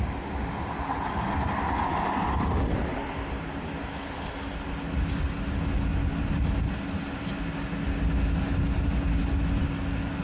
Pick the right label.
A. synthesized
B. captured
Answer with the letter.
B